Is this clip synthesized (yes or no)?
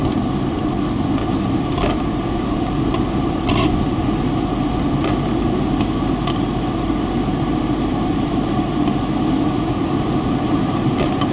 no